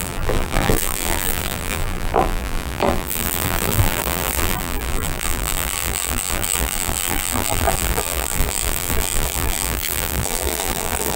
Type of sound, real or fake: fake